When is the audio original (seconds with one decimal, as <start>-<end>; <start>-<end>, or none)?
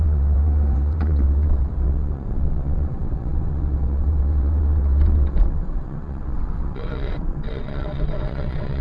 none